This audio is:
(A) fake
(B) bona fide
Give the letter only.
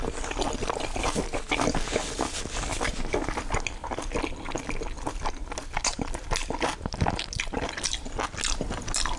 B